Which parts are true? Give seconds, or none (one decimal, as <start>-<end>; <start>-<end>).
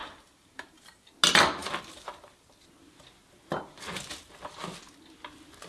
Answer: 1.1-5.7